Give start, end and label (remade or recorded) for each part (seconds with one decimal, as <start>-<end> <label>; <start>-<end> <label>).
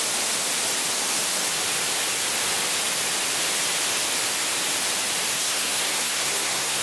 0.0-5.3 recorded; 5.3-6.8 remade